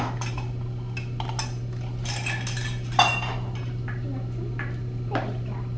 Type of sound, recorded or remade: recorded